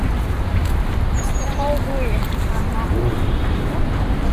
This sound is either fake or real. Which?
fake